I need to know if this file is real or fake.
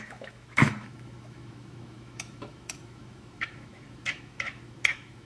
fake